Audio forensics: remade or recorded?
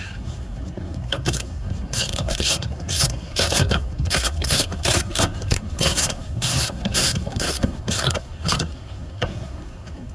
remade